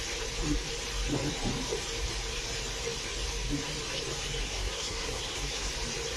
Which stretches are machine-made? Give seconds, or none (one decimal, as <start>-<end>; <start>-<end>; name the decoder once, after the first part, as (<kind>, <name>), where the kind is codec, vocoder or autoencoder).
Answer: 4.4-5.7 (codec, SNAC)